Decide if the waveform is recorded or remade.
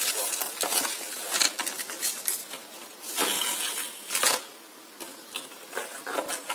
recorded